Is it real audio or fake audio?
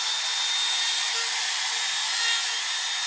real